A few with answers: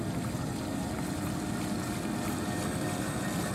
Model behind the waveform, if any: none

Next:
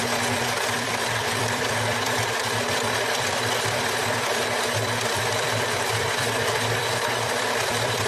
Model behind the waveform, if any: vocoder, BigVGAN v2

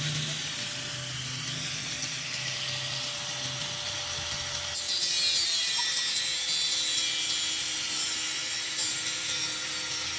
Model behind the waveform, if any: none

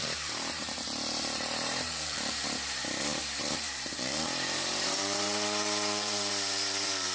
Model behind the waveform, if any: vocoder, BigVGAN v2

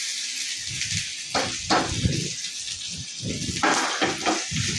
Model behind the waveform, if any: none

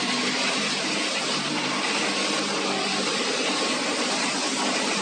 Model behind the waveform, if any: vocoder, BigVGAN v2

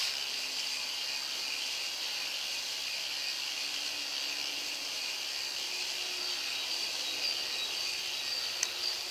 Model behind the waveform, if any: none